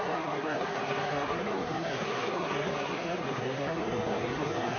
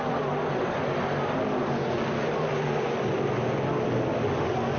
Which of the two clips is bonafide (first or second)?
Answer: second